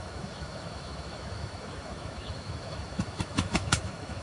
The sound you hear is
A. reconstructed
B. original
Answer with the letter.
A